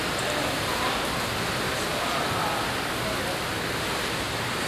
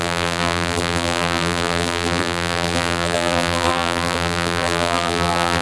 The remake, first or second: second